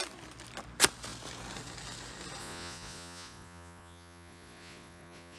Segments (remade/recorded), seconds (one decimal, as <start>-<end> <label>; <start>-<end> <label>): 0.0-2.4 recorded; 2.4-5.4 remade